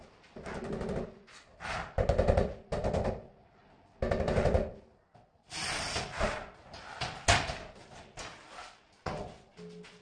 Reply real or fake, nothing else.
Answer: real